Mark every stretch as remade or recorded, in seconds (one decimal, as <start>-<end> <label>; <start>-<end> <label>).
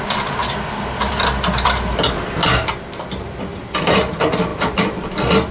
0.0-0.4 recorded; 0.4-2.6 remade; 2.6-3.5 recorded; 3.5-4.1 remade; 4.1-5.5 recorded